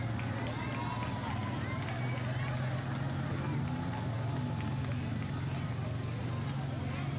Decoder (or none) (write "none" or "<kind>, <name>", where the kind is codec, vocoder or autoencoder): none